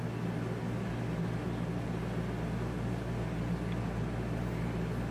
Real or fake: real